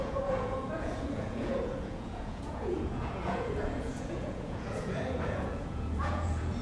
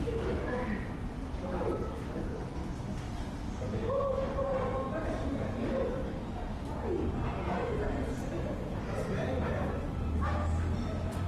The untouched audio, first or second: second